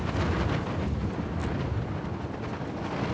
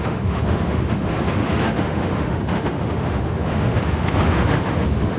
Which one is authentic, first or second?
first